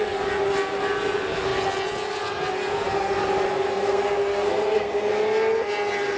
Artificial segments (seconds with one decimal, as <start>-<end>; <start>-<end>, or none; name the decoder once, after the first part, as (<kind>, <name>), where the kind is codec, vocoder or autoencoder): 3.5-5.1 (codec, SNAC)